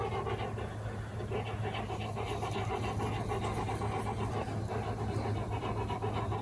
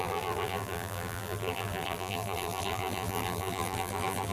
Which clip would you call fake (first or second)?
second